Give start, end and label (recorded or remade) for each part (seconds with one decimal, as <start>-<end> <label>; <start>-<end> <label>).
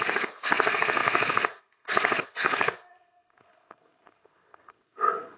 0.0-5.4 remade